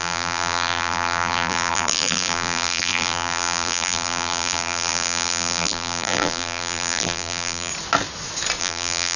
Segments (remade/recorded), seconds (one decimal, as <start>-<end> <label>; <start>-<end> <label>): 0.0-7.7 remade; 7.7-8.6 recorded; 8.6-9.2 remade